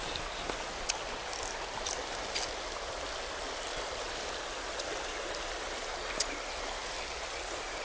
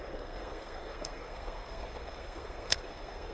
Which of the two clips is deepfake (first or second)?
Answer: second